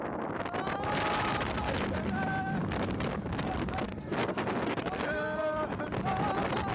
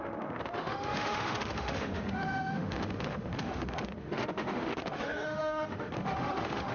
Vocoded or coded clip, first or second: second